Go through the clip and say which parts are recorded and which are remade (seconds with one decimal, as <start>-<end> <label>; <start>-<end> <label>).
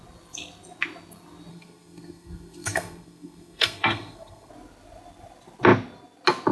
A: 0.0-1.5 recorded; 1.5-4.5 remade; 4.5-6.5 recorded